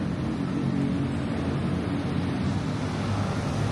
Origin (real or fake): real